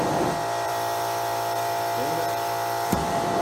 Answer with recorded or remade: remade